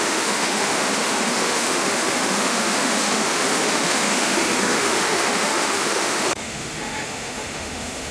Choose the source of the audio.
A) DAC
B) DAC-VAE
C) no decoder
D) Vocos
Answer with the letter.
B